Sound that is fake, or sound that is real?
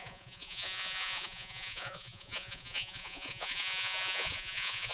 fake